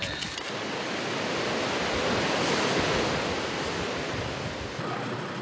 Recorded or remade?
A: recorded